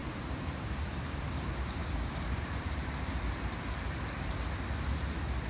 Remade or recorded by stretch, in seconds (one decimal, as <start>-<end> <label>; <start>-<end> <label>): 0.0-1.2 remade; 1.2-1.8 recorded; 1.8-2.7 remade; 2.7-5.5 recorded